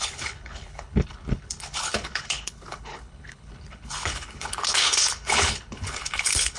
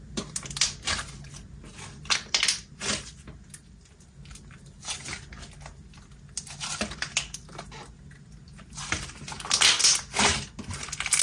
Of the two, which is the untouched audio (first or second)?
second